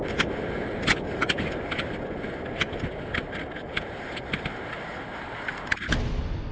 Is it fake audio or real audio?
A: real